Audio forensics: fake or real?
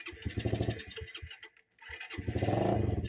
real